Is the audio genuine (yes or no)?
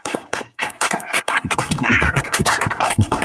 no